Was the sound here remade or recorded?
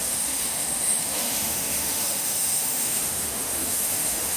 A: remade